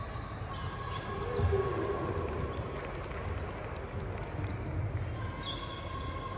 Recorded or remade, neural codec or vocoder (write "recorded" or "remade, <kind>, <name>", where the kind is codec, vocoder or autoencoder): recorded